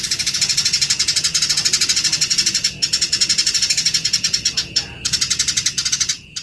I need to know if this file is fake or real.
fake